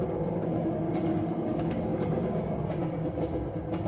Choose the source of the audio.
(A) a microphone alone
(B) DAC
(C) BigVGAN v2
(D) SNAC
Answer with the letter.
B